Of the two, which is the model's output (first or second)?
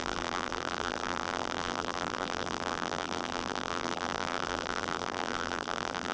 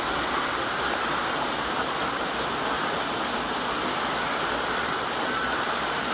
first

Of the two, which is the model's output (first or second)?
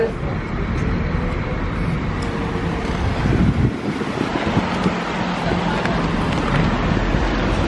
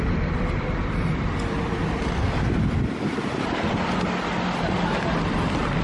second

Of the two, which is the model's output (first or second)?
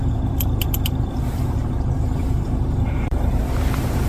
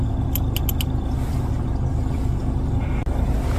first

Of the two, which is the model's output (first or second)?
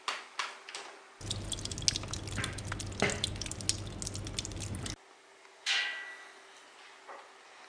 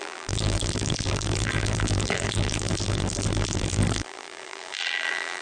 second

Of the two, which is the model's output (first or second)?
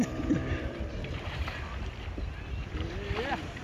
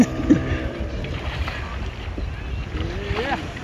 first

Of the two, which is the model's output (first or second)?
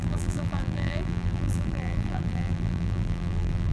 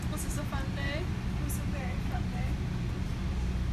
first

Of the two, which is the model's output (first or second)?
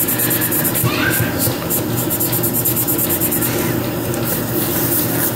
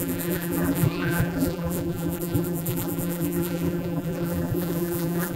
second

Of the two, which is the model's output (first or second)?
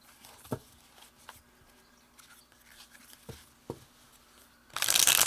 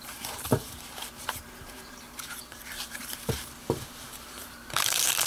second